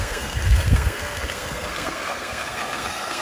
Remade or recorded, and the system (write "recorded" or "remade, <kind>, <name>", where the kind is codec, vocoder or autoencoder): remade, codec, SNAC